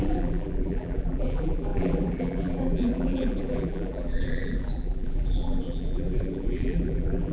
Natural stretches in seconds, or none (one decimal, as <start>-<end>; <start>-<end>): none